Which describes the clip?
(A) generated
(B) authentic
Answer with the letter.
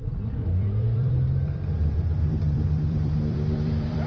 A